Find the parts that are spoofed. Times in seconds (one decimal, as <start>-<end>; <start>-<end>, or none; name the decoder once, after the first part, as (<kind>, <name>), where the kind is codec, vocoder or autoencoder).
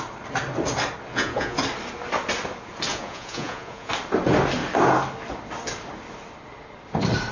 1.1-1.6 (vocoder, Vocos); 2.9-3.9